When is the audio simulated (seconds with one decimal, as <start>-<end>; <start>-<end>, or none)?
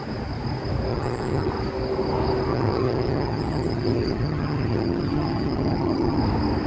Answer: 0.9-1.5; 2.5-6.2